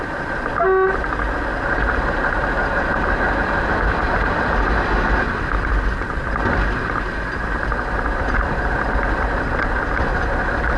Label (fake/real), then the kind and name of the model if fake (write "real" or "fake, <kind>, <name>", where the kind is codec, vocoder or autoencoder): real